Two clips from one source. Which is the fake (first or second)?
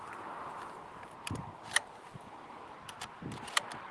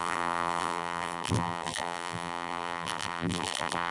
second